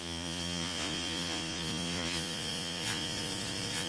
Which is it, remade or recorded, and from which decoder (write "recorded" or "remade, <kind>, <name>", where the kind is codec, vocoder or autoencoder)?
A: remade, vocoder, Vocos